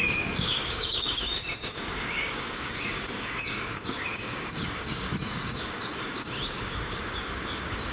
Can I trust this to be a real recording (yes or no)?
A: no